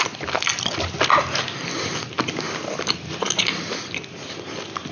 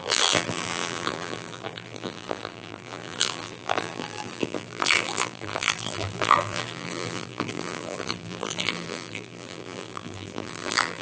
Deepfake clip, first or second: second